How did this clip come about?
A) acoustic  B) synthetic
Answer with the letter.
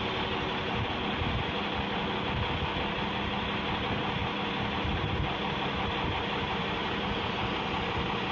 A